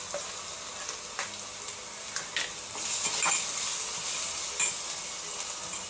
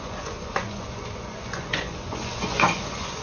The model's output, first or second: second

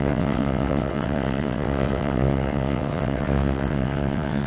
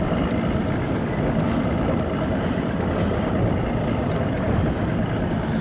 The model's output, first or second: first